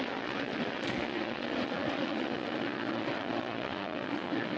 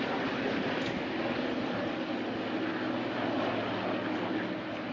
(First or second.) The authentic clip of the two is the second